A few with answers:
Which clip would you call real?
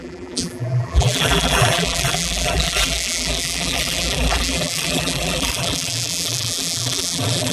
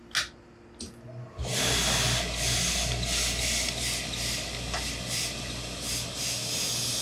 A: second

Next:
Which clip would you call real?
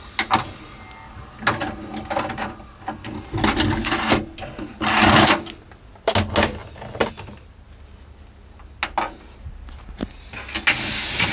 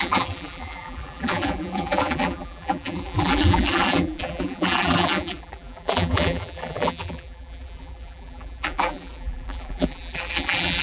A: first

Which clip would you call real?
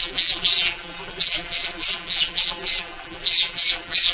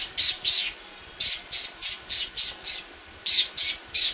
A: second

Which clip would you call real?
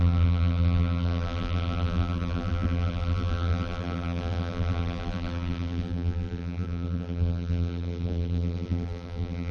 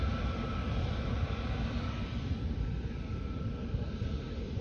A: second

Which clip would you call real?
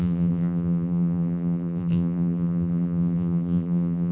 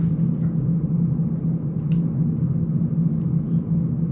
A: second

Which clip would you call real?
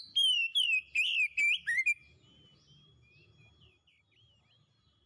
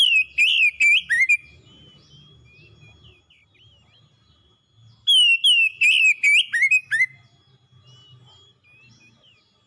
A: second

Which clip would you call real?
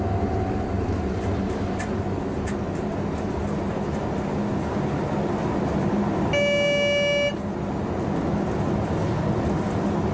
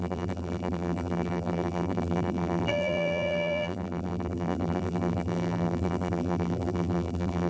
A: first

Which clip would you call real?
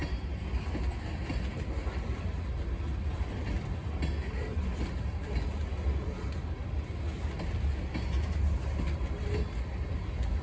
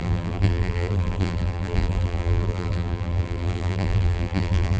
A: first